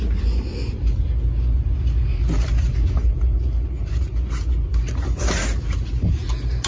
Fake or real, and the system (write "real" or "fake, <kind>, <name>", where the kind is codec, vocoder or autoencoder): real